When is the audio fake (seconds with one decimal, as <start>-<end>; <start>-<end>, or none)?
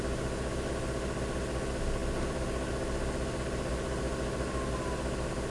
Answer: none